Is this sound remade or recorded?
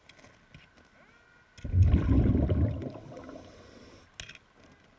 recorded